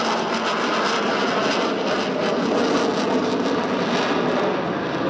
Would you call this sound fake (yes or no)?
no